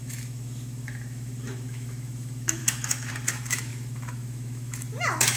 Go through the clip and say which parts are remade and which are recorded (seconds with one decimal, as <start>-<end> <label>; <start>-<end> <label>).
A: 0.0-5.4 remade